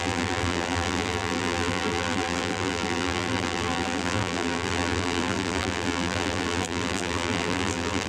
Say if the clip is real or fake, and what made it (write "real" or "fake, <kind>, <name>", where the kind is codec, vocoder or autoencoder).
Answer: fake, vocoder, BigVGAN v2